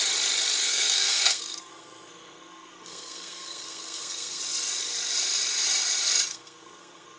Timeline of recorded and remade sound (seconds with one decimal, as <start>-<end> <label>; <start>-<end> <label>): 0.0-0.6 recorded; 0.6-4.4 remade; 4.4-6.3 recorded; 6.3-7.2 remade